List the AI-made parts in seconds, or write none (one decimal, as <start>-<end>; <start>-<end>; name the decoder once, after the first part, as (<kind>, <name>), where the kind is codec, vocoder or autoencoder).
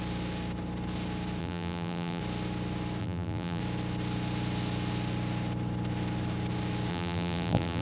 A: 1.4-2.2 (vocoder, BigVGAN v2); 3.0-3.6; 6.9-7.8